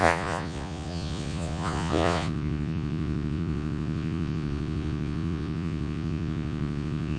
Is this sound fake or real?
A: fake